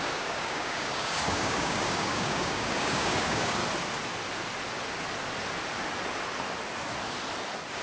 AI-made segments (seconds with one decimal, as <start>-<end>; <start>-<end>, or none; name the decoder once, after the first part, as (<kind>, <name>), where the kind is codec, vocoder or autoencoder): 0.0-3.6 (codec, DAC)